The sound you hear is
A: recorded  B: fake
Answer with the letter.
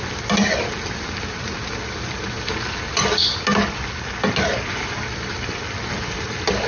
A